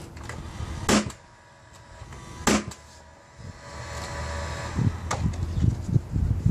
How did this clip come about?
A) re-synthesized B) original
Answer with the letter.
B